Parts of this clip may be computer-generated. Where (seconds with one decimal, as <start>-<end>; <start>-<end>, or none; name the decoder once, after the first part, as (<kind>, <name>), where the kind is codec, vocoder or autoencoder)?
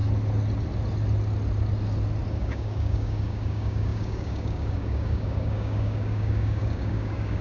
2.3-7.4 (codec, DAC)